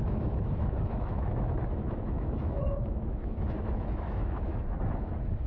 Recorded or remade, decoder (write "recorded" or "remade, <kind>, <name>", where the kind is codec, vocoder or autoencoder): remade, autoencoder, DAC-VAE